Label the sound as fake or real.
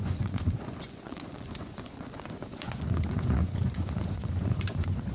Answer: fake